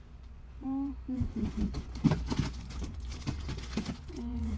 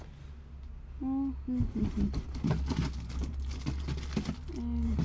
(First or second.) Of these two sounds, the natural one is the second